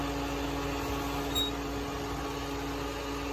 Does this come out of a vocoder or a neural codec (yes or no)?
no